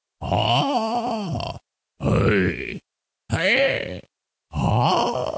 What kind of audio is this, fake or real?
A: real